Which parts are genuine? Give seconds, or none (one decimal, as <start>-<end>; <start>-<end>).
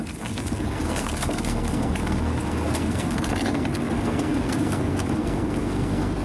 none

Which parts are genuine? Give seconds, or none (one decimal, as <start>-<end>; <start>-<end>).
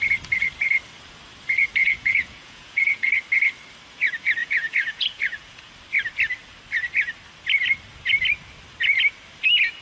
0.0-1.8; 3.1-4.4; 5.7-9.8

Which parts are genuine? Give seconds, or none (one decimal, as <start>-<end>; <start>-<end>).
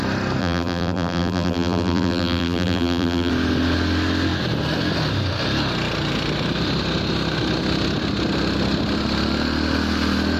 0.0-0.4; 3.3-10.4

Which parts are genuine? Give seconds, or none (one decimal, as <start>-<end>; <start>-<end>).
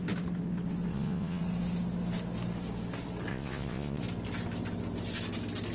0.0-0.9; 1.4-3.3; 4.0-5.7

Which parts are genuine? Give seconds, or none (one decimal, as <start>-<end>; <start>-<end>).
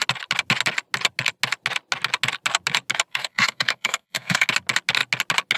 0.0-3.1; 4.5-5.6